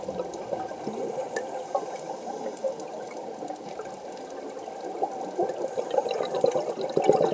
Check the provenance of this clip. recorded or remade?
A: recorded